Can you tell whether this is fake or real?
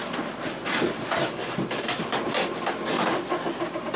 real